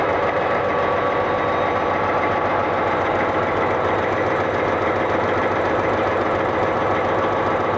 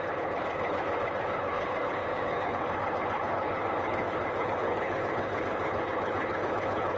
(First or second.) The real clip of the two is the first